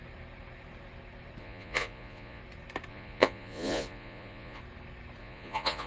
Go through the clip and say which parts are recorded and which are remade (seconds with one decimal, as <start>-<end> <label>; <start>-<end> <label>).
0.0-1.4 recorded; 1.4-2.4 remade; 2.4-2.9 recorded; 2.9-4.6 remade; 4.6-5.2 recorded; 5.2-5.9 remade